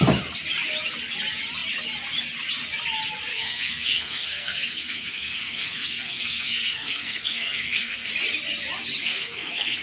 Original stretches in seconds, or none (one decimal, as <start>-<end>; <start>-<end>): 0.0-3.3; 8.1-9.0